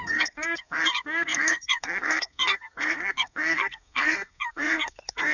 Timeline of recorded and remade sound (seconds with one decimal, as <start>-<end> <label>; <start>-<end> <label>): 0.0-5.3 remade